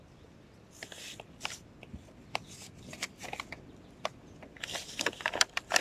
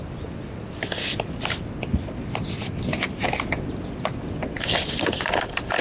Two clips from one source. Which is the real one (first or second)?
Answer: second